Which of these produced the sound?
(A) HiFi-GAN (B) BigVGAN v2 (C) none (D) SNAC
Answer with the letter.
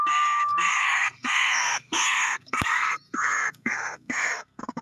D